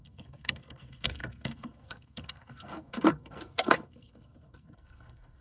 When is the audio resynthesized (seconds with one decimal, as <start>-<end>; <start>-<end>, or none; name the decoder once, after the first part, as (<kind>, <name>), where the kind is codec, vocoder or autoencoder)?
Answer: 0.0-5.4 (codec, SNAC)